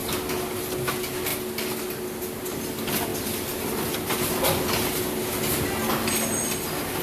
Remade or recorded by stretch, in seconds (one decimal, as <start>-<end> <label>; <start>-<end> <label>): 0.0-3.1 recorded; 3.1-4.2 remade; 4.2-7.0 recorded